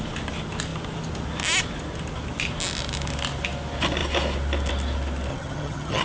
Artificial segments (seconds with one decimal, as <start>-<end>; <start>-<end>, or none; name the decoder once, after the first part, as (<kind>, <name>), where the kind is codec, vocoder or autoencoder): 5.3-6.0 (vocoder, HiFi-GAN)